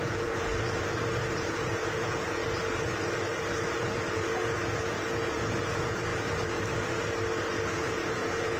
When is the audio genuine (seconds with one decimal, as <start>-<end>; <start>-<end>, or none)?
0.5-1.4; 2.4-4.1; 6.1-7.8

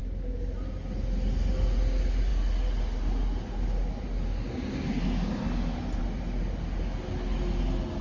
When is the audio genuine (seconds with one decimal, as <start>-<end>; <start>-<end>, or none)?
0.0-8.0